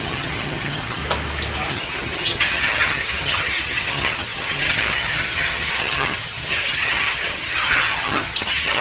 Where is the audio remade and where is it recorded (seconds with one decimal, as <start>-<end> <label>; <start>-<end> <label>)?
0.0-1.0 remade; 1.0-1.7 recorded; 1.7-8.8 remade

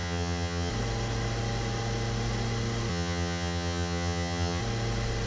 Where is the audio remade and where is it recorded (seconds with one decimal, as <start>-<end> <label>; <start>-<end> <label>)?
0.0-0.7 remade; 0.7-2.9 recorded; 2.9-4.6 remade; 4.6-5.3 recorded

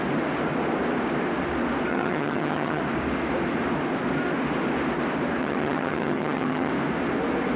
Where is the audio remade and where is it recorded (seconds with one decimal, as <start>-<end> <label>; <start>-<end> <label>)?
0.0-1.9 recorded; 1.9-2.8 remade; 2.8-5.4 recorded; 5.4-6.7 remade; 6.7-7.6 recorded

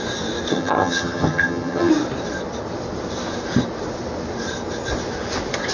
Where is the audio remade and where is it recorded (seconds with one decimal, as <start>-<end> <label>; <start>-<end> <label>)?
0.0-0.5 recorded; 0.5-1.9 remade; 1.9-5.7 recorded

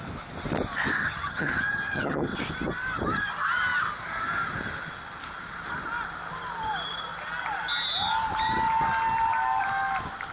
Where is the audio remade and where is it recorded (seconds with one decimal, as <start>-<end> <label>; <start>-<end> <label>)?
0.0-1.0 recorded; 1.0-2.4 remade; 2.4-10.3 recorded

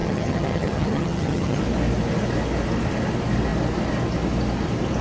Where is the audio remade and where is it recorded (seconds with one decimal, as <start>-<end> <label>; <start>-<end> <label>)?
0.0-1.6 remade; 1.6-5.0 recorded

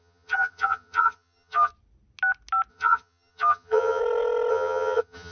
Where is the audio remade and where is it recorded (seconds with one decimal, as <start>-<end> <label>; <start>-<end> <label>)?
0.0-1.7 remade; 1.7-2.7 recorded; 2.7-4.0 remade; 4.0-4.5 recorded; 4.5-5.3 remade